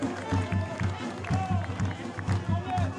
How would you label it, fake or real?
real